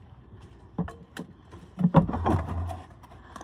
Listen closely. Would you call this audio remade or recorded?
remade